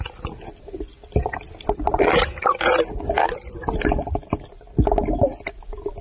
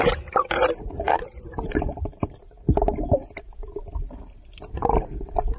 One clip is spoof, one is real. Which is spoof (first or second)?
second